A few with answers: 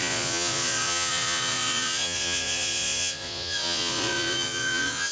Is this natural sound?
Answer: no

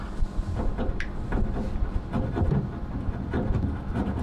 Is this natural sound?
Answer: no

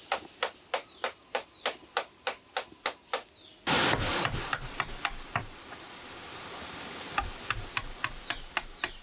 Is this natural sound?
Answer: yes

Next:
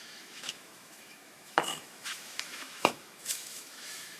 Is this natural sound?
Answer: no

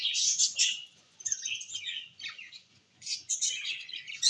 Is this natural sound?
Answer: no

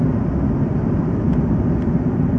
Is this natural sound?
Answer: yes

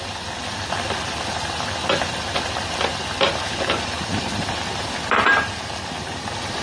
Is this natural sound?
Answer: yes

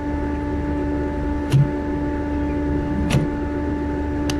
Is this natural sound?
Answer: yes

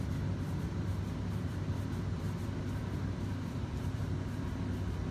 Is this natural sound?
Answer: no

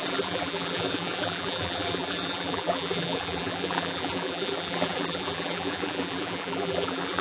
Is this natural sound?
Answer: no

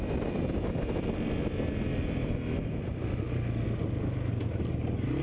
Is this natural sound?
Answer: yes